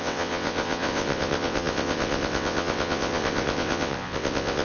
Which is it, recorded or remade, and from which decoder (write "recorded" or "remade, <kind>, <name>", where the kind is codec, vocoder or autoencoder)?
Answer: remade, vocoder, WaveNeXt